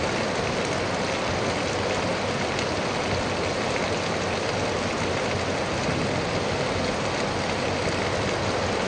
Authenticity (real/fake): real